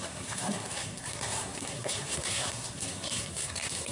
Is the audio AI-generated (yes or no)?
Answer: yes